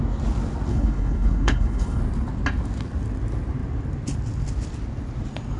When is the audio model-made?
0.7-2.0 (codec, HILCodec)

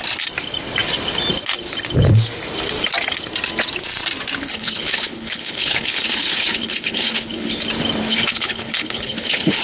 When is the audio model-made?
4.4-7.6 (codec, HILCodec); 8.1-9.6

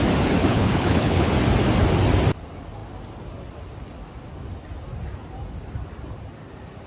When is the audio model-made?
0.4-1.3 (codec, HILCodec)

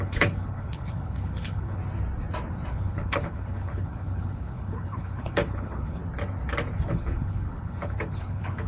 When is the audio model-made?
0.0-1.8 (codec, HILCodec); 2.7-6.0; 6.9-8.7

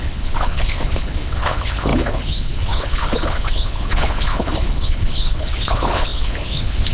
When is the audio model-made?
0.0-6.9 (codec, HILCodec)

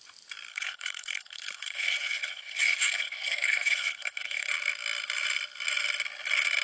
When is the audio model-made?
0.5-4.5 (codec, HILCodec)